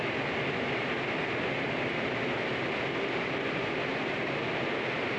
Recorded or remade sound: recorded